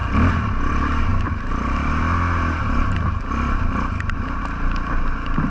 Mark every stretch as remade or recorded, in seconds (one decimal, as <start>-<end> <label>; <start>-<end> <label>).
0.0-5.5 recorded